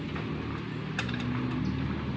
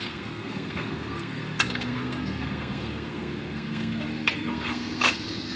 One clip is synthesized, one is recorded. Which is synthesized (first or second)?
second